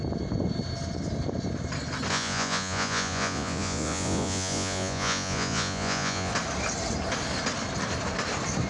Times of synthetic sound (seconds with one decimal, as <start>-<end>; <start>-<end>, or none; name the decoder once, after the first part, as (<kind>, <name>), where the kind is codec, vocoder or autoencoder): 2.1-6.3 (vocoder, Vocos)